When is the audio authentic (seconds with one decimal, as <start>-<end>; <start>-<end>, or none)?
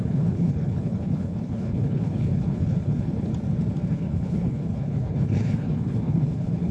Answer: 3.3-3.9